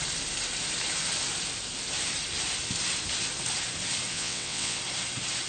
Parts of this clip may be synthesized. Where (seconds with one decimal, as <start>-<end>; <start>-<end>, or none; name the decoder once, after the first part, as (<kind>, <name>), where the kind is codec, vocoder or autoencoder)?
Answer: 4.1-4.8 (vocoder, WaveNeXt)